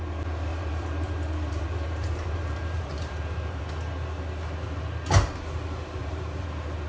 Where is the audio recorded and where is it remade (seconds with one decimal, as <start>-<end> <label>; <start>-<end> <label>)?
0.0-0.5 recorded; 0.5-3.6 remade; 3.6-6.0 recorded; 6.0-6.9 remade